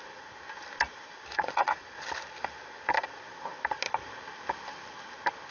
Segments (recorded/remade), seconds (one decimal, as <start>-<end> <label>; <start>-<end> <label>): 0.0-1.3 recorded; 1.3-1.8 remade; 1.8-5.5 recorded